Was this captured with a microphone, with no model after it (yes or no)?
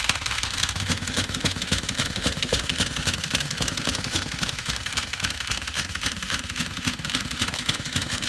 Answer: no